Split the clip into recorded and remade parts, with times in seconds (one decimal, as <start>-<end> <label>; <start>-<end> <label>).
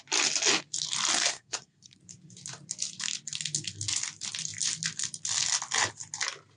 0.0-1.3 recorded; 1.3-2.0 remade; 2.0-6.6 recorded